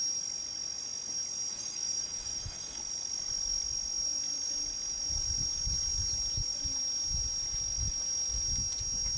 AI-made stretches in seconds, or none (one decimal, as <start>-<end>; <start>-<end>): 1.5-2.8